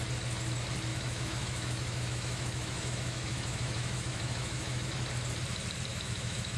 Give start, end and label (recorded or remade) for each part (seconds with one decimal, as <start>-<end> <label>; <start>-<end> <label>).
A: 0.0-0.9 recorded; 0.9-4.9 remade; 4.9-5.9 recorded; 5.9-6.6 remade